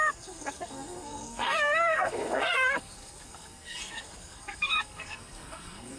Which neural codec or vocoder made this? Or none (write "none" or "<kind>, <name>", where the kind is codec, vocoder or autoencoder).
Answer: codec, SNAC